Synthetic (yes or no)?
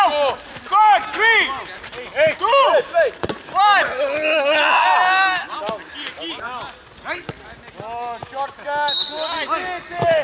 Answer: no